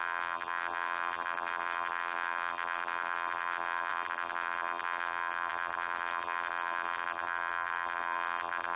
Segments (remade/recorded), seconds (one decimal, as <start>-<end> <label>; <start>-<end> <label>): 0.0-8.8 remade